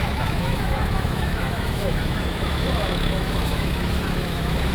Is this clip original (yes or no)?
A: no